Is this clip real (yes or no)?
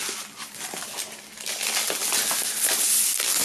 yes